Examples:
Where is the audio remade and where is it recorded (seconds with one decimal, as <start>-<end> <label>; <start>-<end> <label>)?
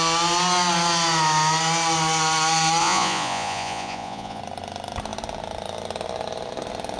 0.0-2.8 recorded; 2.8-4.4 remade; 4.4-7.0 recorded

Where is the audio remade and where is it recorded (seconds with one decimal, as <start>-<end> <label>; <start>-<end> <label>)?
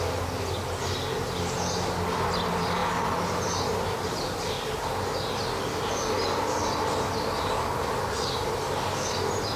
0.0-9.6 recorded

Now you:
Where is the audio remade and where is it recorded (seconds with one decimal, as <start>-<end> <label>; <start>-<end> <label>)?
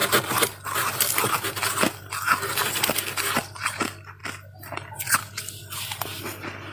0.0-6.7 recorded